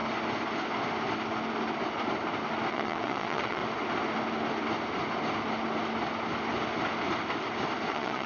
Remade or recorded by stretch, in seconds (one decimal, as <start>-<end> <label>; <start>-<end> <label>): 0.0-2.7 recorded; 2.7-3.6 remade; 3.6-7.9 recorded; 7.9-8.3 remade